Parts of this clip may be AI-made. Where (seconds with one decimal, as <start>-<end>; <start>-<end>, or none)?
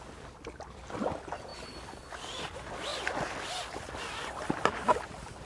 none